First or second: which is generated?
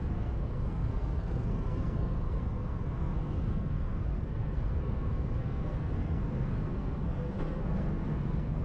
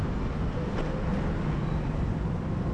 first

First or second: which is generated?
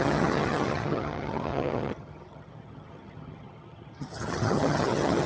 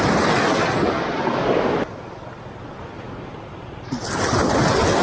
first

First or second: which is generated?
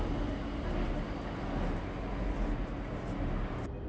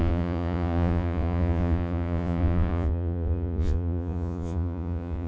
second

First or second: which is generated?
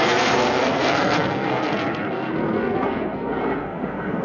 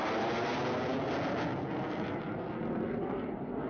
first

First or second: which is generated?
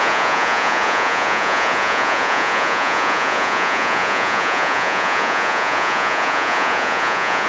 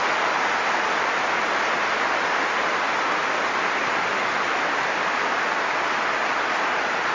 first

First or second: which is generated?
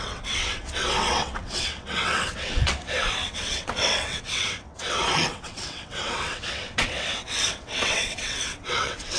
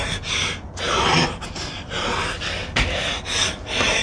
first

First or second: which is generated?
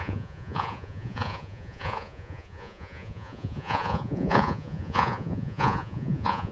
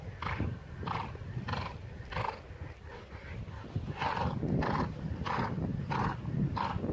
first